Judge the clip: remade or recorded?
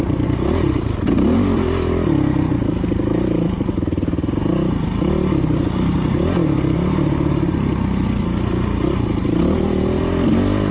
recorded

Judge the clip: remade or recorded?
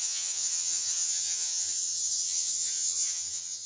remade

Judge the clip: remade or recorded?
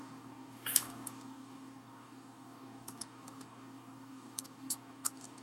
remade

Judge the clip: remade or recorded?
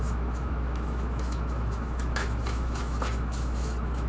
remade